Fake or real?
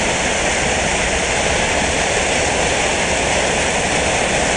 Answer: real